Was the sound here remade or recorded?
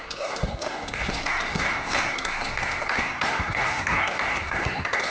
remade